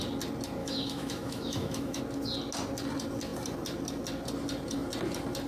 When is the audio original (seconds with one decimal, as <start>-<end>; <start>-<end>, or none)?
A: 0.0-0.6; 2.0-5.5